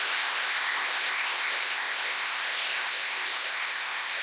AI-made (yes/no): yes